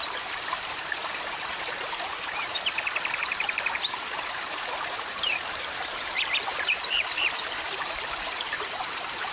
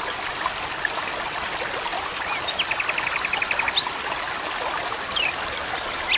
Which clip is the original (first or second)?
second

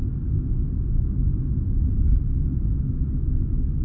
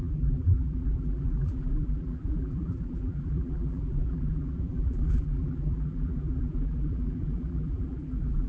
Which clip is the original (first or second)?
first